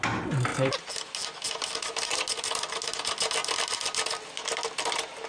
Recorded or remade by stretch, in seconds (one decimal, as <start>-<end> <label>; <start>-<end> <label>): 0.0-5.3 recorded